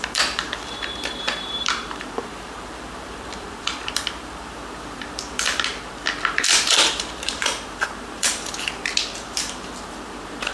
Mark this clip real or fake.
fake